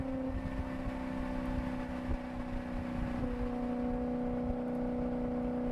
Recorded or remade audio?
recorded